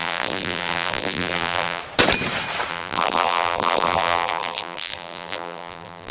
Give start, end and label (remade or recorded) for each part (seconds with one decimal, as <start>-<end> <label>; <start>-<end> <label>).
0.0-1.8 remade; 1.8-2.7 recorded; 2.7-6.1 remade